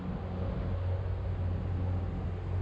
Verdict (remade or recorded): recorded